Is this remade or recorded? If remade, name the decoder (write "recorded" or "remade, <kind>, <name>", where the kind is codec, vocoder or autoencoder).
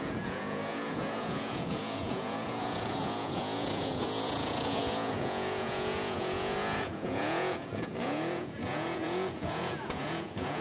remade, vocoder, Vocos